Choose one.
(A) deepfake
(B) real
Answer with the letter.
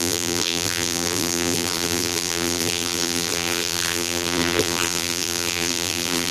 A